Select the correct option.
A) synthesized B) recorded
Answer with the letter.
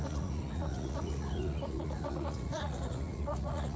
A